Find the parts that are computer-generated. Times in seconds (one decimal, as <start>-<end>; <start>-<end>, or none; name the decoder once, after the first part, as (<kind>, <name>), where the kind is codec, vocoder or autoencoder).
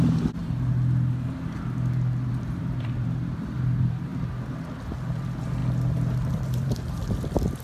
0.0-0.4 (vocoder, BigVGAN v2); 2.3-5.6; 6.3-7.6